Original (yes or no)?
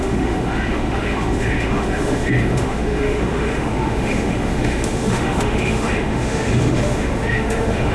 no